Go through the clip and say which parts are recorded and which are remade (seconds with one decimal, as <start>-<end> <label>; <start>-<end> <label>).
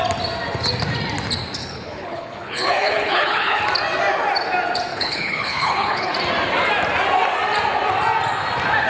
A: 0.0-1.6 recorded; 1.6-3.6 remade; 3.6-4.9 recorded; 4.9-6.1 remade; 6.1-8.9 recorded